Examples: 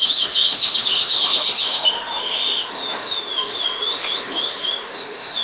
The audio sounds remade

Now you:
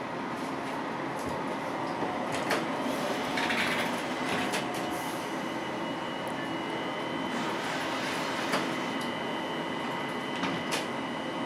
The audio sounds recorded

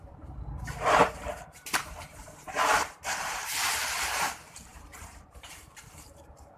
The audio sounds remade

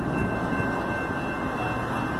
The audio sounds recorded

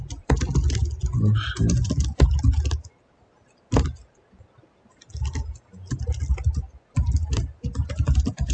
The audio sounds recorded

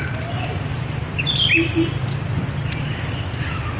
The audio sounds remade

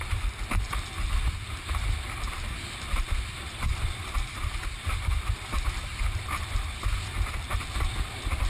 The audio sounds recorded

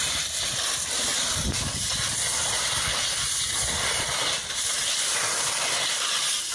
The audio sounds recorded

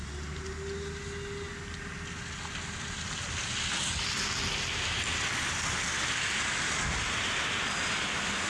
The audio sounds recorded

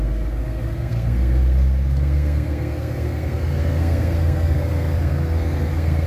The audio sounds remade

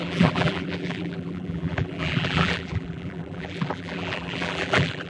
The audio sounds remade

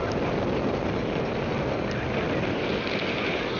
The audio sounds recorded